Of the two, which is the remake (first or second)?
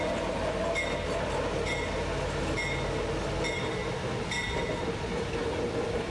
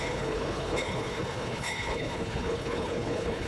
second